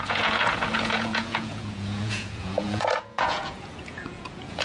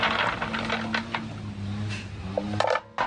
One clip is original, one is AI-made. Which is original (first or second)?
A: second